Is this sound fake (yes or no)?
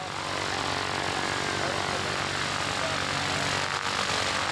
no